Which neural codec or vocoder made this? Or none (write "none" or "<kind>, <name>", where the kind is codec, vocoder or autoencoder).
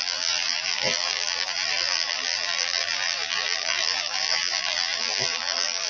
vocoder, BigVGAN v2